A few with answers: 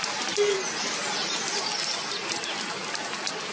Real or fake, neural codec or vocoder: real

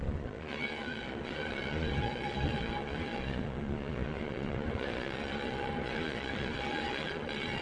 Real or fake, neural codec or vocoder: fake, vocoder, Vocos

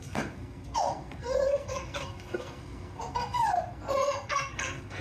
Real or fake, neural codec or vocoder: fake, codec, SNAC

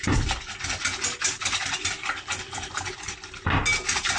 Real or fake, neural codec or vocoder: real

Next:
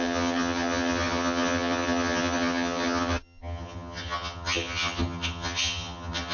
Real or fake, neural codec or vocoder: fake, vocoder, HiFi-GAN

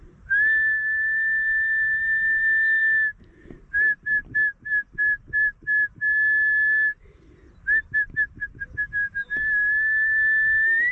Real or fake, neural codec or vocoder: real